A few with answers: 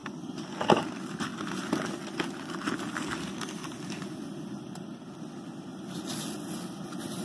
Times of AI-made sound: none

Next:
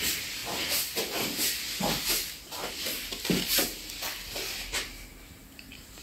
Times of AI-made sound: 5.4-6.0 (vocoder, BigVGAN v2)

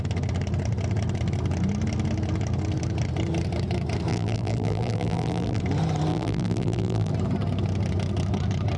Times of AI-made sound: 4.1-5.6 (vocoder, BigVGAN v2); 6.1-7.1

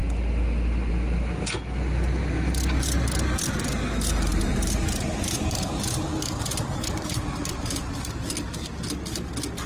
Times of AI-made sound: 4.3-7.9 (vocoder, BigVGAN v2)

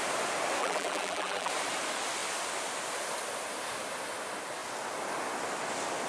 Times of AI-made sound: 0.6-1.5 (vocoder, BigVGAN v2)

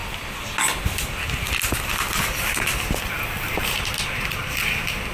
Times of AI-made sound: none

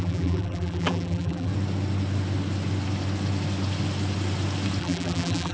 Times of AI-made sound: 0.0-1.5 (vocoder, BigVGAN v2); 4.8-5.5